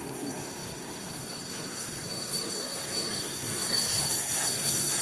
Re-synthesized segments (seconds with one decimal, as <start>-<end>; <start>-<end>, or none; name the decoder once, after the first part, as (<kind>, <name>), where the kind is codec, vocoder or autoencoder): 0.0-5.0 (codec, SNAC)